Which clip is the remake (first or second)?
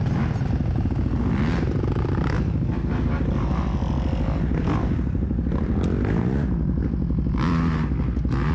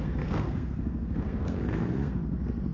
second